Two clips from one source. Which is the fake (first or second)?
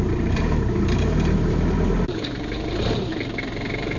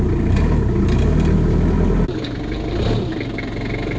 first